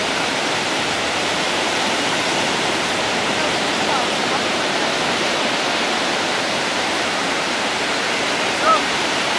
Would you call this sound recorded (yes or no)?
no